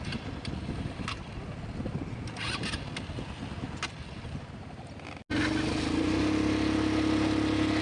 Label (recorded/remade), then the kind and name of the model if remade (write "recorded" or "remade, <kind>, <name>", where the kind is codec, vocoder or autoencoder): recorded